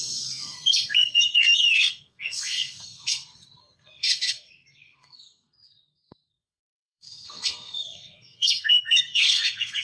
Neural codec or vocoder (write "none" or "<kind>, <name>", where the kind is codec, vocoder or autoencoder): codec, SNAC